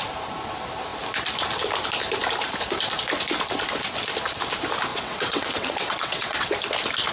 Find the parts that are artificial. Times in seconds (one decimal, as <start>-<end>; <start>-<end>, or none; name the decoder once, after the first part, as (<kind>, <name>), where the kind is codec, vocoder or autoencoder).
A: 4.9-6.5 (vocoder, WaveNeXt)